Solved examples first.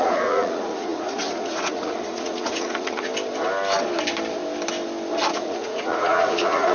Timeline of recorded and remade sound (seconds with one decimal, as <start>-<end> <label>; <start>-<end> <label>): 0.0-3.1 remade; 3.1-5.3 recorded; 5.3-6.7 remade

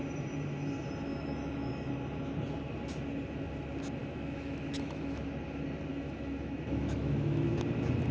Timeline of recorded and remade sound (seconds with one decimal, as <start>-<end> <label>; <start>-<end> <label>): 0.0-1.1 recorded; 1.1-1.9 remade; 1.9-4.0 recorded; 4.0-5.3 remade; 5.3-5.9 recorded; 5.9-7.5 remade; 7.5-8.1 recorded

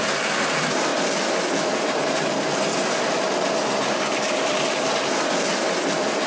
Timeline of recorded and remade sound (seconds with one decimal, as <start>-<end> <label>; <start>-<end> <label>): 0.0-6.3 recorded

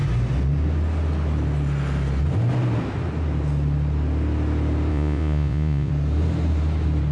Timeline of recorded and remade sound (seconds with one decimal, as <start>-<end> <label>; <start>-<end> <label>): 0.0-4.9 recorded; 4.9-5.9 remade; 5.9-7.1 recorded